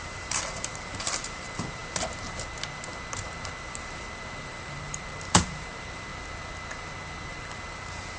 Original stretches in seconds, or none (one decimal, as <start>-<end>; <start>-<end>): 1.8-4.5; 6.1-7.3